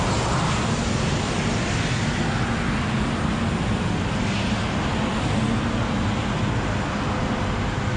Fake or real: real